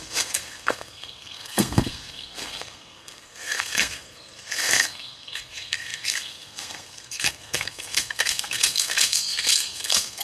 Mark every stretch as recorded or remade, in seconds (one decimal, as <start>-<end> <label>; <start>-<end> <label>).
0.0-10.2 remade